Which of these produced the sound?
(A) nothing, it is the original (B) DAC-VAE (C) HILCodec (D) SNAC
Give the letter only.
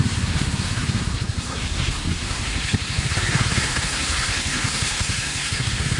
D